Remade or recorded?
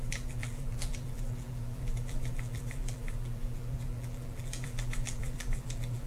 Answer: remade